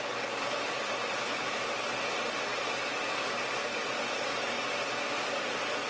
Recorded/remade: recorded